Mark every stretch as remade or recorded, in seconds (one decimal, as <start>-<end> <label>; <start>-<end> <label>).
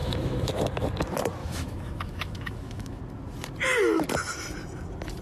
0.0-0.5 remade; 0.5-1.4 recorded; 1.4-3.0 remade; 3.0-5.2 recorded